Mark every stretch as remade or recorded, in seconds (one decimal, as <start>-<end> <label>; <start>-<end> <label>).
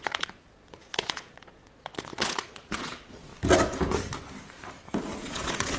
0.0-3.3 remade; 3.3-5.2 recorded; 5.2-5.8 remade